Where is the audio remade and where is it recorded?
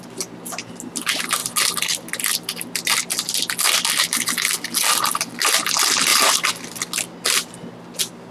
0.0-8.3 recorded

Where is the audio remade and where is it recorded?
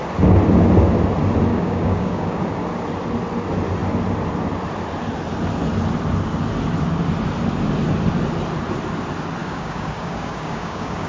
0.0-1.5 recorded; 1.5-2.4 remade; 2.4-9.4 recorded; 9.4-11.1 remade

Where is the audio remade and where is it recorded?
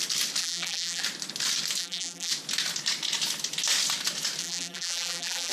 0.0-0.4 recorded; 0.4-1.0 remade; 1.0-1.8 recorded; 1.8-2.3 remade; 2.3-4.4 recorded; 4.4-5.5 remade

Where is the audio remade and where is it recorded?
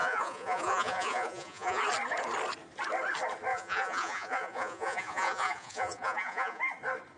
0.0-1.8 remade; 1.8-3.5 recorded; 3.5-6.6 remade; 6.6-7.2 recorded